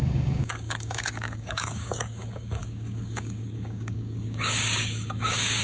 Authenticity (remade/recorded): remade